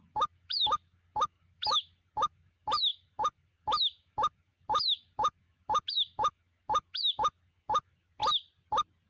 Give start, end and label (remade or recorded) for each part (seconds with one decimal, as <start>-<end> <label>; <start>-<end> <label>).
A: 0.0-8.2 remade; 8.2-9.1 recorded